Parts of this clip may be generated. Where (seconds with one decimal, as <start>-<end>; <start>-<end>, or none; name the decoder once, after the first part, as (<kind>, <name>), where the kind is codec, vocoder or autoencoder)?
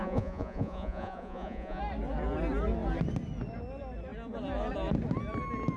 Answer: 0.0-1.8 (vocoder, Vocos)